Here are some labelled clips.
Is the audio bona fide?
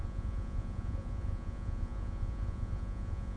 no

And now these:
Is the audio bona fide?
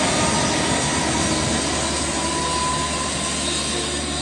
yes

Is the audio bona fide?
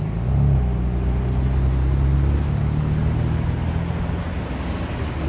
yes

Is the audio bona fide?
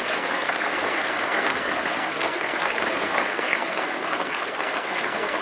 no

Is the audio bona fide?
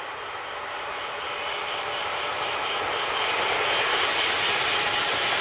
yes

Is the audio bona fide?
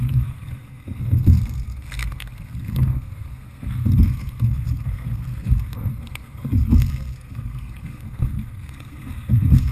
no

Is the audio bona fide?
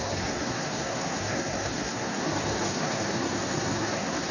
no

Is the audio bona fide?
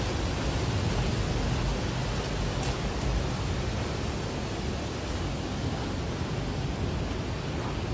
yes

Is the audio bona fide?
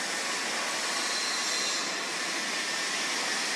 yes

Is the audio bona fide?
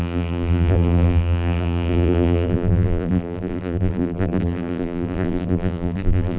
no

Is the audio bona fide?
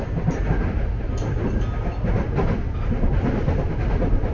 yes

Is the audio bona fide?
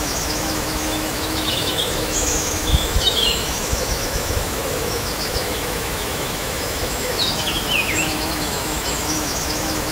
no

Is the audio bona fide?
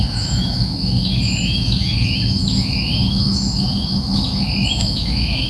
no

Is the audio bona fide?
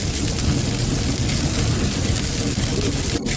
yes